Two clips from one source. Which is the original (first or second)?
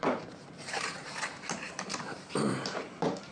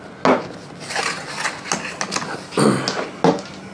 second